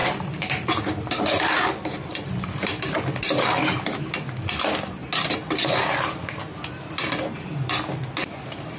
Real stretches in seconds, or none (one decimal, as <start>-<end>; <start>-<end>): 0.8-2.1; 2.7-8.8